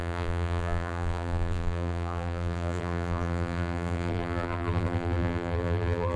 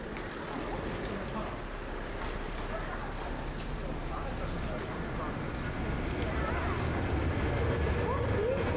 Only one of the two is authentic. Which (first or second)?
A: second